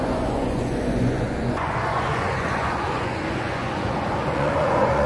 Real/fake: fake